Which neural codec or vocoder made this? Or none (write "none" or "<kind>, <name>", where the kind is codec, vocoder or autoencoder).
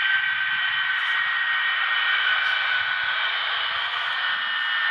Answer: none